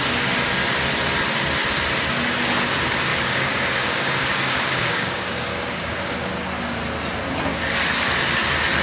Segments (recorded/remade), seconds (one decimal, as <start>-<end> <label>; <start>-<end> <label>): 0.0-3.1 recorded; 3.1-6.1 remade; 6.1-8.8 recorded

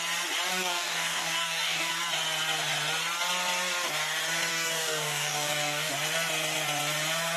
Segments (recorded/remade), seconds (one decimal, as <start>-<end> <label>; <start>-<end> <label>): 0.0-0.5 recorded; 0.5-1.9 remade; 1.9-4.5 recorded; 4.5-5.9 remade; 5.9-7.4 recorded

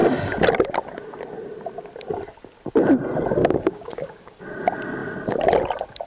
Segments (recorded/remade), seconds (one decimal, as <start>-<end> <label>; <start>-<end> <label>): 0.0-3.4 recorded; 3.4-4.4 remade; 4.4-6.1 recorded